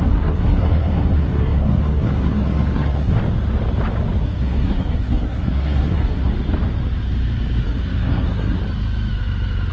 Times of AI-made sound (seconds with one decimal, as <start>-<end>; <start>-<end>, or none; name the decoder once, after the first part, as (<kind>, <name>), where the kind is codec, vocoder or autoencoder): 0.0-3.2 (codec, SNAC); 4.2-6.3; 7.6-8.6